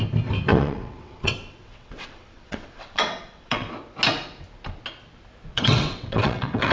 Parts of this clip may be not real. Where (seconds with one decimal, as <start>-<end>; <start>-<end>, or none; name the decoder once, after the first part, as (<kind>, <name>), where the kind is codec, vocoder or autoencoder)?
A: 0.5-3.7 (vocoder, WaveNeXt); 5.5-6.7